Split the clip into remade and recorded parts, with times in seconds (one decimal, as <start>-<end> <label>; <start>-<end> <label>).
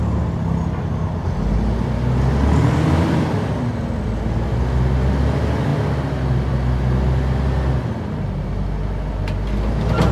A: 0.0-10.1 recorded